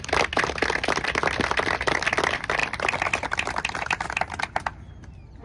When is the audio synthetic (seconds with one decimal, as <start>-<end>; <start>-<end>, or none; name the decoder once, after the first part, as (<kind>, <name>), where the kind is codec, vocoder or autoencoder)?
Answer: none